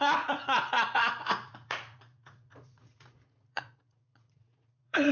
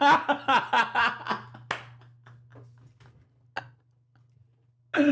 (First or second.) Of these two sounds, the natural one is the second